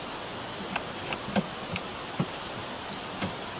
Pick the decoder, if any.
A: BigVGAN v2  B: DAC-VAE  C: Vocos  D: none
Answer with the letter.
D